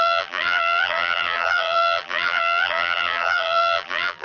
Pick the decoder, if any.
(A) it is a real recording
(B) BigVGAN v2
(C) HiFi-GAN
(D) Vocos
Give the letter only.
B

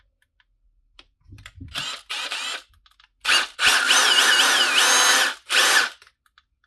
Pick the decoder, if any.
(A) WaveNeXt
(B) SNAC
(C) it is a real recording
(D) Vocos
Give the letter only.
C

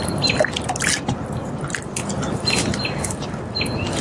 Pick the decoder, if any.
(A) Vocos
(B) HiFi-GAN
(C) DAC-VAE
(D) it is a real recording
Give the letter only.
D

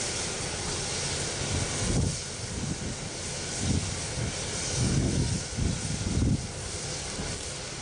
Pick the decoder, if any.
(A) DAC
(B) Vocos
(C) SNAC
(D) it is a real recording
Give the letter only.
D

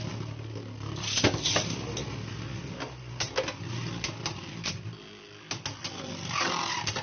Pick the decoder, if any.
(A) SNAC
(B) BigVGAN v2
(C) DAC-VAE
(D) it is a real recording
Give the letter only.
D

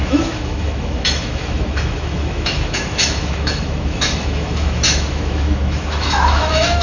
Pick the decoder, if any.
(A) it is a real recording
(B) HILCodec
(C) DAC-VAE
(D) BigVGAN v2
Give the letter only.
C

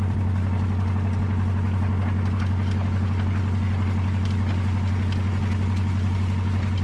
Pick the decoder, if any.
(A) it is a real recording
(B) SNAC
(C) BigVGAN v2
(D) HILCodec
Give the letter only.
A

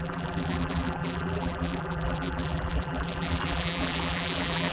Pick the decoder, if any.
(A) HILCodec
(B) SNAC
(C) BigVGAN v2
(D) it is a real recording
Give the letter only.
C